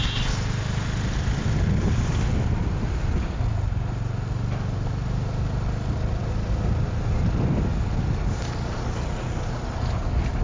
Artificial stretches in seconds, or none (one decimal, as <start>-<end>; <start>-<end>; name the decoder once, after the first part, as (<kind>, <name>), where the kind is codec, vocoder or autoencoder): none